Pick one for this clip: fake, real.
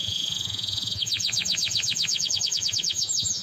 fake